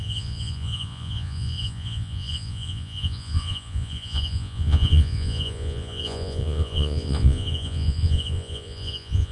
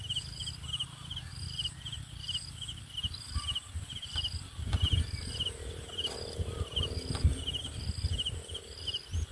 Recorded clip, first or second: second